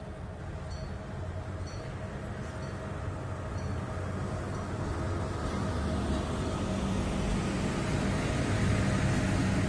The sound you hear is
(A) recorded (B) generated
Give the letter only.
A